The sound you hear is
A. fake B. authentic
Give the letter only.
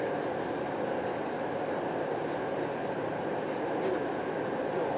B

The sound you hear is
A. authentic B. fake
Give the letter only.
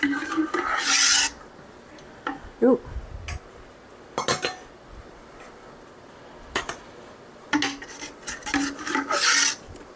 A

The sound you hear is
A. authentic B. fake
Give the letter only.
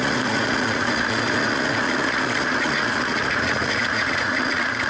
B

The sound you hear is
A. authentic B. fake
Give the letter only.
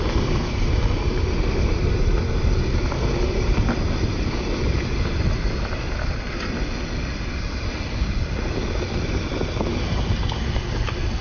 A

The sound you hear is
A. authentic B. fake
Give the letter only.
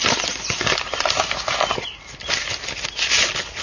A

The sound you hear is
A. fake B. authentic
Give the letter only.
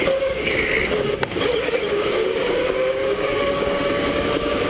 A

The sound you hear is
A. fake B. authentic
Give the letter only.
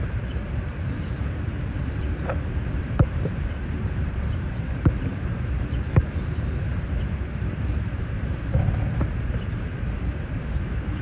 A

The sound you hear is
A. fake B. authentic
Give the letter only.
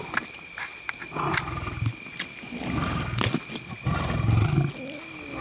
B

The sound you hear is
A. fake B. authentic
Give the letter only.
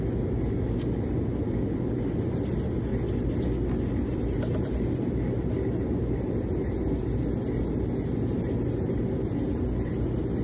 B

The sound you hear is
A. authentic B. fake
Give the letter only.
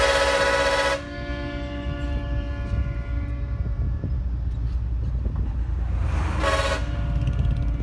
A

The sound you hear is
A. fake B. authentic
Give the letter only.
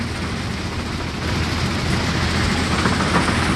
B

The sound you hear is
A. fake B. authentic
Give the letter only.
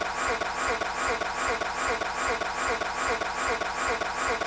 B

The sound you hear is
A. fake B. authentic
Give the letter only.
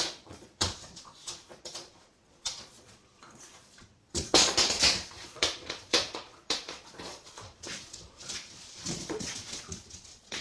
A